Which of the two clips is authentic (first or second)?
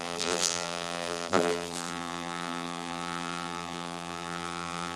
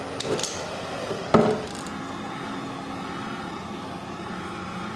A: second